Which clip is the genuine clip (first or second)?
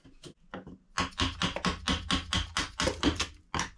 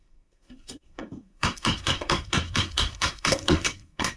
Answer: first